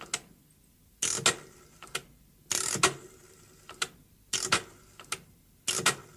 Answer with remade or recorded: recorded